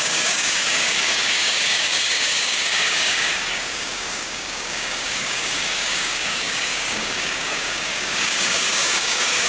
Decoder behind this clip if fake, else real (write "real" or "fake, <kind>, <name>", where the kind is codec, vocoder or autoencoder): fake, codec, DAC